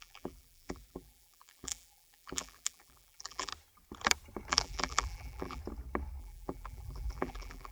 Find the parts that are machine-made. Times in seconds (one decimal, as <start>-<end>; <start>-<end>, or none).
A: 0.0-3.5; 4.5-5.6; 6.2-7.7